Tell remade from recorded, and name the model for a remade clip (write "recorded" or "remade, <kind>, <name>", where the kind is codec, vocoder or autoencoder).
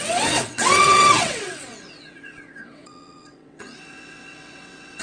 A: remade, vocoder, WaveNeXt